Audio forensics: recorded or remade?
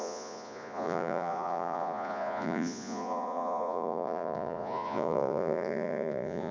remade